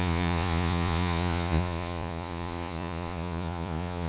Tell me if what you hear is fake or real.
fake